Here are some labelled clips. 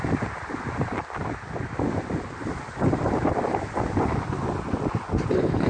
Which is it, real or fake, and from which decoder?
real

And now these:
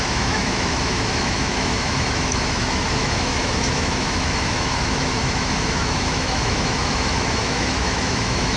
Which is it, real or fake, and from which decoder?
fake, autoencoder, DAC-VAE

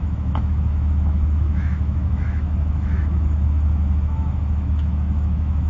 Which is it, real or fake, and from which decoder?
fake, autoencoder, DAC-VAE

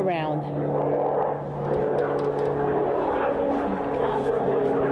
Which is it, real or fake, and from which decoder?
real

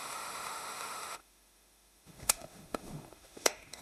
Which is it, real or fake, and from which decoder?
fake, autoencoder, DAC-VAE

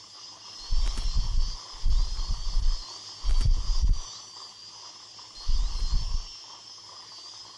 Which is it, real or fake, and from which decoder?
real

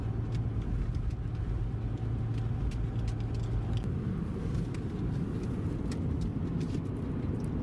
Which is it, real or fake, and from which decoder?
real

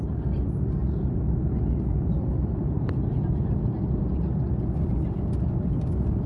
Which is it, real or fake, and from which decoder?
real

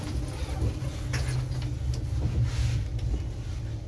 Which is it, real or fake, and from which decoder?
real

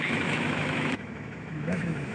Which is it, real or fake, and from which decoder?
fake, autoencoder, DAC-VAE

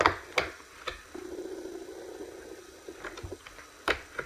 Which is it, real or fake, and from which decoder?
real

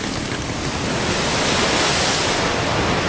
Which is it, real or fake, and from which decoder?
real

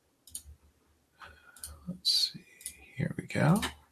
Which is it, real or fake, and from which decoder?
real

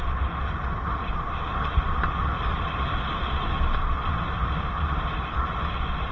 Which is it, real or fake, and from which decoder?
real